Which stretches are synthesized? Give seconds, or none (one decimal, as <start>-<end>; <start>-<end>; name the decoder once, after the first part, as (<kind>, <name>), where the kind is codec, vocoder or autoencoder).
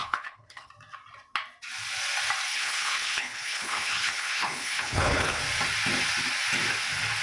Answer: 0.0-0.7 (codec, HILCodec); 2.5-5.4